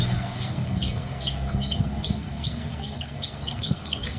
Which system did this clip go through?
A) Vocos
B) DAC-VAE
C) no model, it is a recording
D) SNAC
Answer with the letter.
D